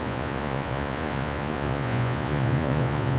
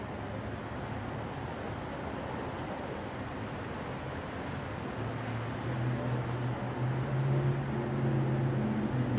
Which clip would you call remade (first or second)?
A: first